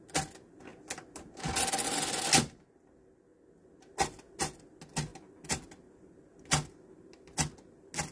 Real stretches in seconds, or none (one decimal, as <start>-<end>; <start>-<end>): 0.0-8.1